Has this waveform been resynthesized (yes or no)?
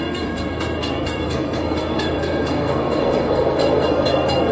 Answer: yes